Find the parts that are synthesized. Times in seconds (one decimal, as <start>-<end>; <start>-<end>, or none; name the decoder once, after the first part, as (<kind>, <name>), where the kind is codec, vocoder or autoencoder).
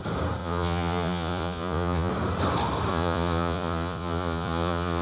0.4-2.1 (vocoder, Vocos); 2.9-5.0